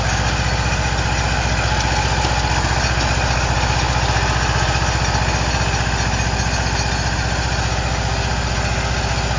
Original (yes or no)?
yes